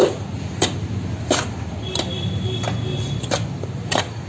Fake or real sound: real